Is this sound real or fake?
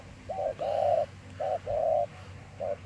real